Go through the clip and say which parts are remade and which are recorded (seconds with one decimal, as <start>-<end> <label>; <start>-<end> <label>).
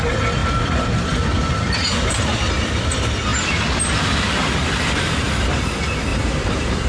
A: 0.0-0.4 recorded; 0.4-1.4 remade; 1.4-6.1 recorded; 6.1-6.9 remade